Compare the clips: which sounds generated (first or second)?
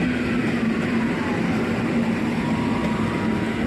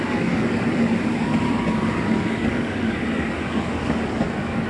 second